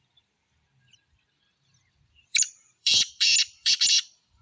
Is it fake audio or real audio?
fake